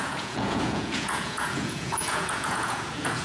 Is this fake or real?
fake